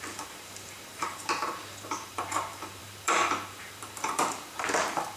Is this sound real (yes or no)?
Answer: no